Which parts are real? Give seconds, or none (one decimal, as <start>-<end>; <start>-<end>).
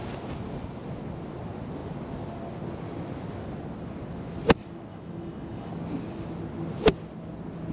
0.0-4.9; 5.7-7.7